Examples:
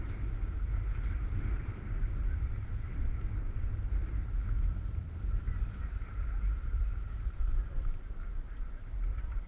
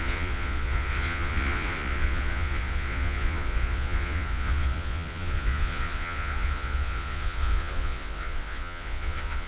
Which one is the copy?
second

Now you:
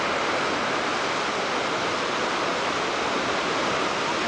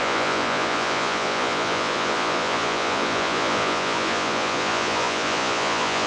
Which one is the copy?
second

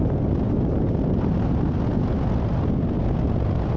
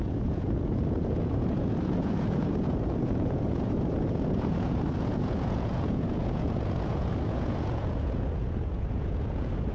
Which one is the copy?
second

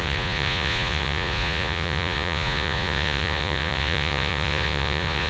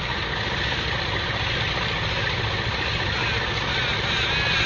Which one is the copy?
first